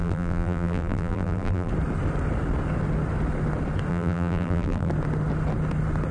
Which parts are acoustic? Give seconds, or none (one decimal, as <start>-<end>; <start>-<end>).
1.7-3.9; 4.9-6.1